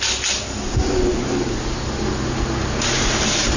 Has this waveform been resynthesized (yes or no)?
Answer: no